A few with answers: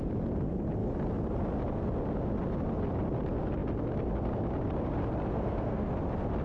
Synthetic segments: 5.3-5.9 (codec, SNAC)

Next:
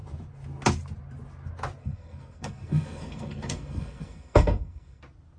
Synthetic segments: 1.8-5.0 (codec, SNAC)

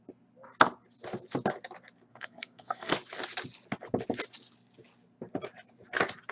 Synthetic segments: 2.1-2.9 (codec, SNAC)

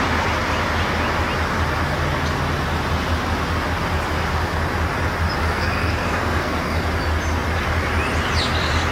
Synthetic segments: 5.4-6.8 (codec, SNAC)

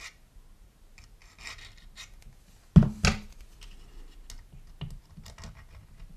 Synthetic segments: none

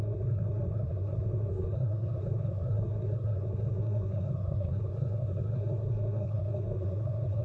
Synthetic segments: 0.0-7.4 (codec, SNAC)

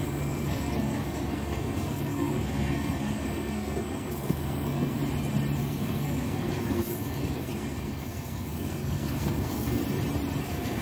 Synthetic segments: 0.0-5.0 (codec, SNAC); 5.6-9.8; 10.4-10.8